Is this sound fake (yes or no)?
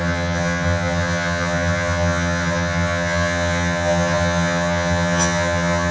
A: yes